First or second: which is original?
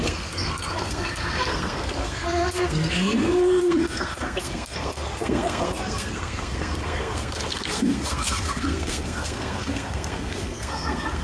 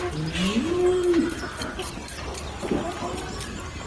second